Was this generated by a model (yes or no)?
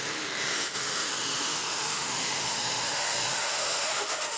yes